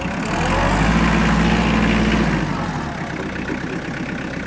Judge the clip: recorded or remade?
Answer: recorded